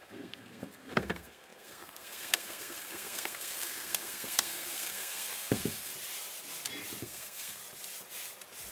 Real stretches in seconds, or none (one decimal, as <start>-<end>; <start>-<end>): 5.9-7.0; 7.6-8.7